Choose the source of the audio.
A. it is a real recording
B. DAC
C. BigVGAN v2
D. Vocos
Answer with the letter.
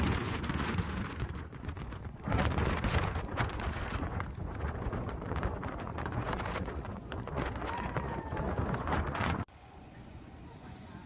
D